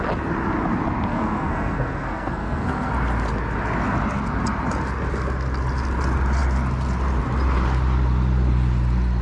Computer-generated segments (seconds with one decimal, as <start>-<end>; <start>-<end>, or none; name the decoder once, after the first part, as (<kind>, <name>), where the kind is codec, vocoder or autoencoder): 1.1-2.9 (codec, SNAC)